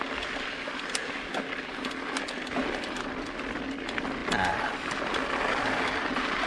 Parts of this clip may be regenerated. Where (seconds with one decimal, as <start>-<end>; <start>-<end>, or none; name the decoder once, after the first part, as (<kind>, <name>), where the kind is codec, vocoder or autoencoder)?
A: 4.2-5.0 (vocoder, BigVGAN v2)